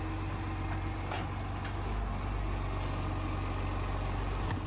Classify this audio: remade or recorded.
recorded